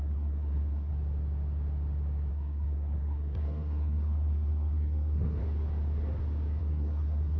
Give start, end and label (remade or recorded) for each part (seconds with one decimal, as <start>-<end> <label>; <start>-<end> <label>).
0.0-0.9 remade; 0.9-2.3 recorded; 2.3-5.4 remade; 5.4-6.6 recorded; 6.6-7.4 remade